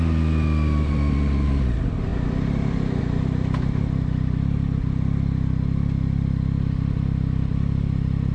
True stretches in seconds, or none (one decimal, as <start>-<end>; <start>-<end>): 0.0-8.3